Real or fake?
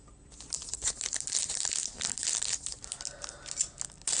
real